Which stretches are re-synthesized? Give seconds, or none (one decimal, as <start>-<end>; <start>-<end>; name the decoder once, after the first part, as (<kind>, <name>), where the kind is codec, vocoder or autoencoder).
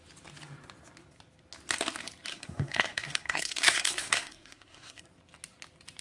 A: 2.3-5.0 (codec, SNAC)